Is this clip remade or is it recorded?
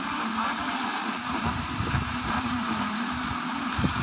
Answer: remade